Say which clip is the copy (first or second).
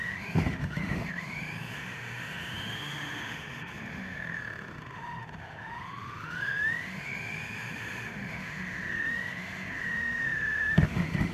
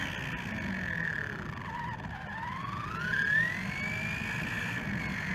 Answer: first